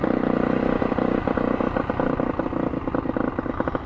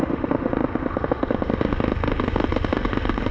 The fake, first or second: second